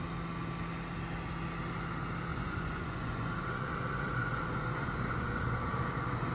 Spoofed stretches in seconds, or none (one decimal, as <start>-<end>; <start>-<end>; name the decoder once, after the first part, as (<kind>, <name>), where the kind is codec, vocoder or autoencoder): 2.3-6.3 (vocoder, Vocos)